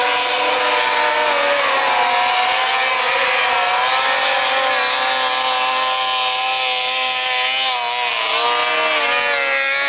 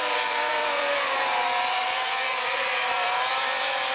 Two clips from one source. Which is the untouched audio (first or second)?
first